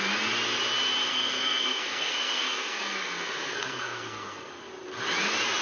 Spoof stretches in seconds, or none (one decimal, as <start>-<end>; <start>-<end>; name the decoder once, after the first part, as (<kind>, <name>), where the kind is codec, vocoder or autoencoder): 1.1-4.5 (codec, SNAC)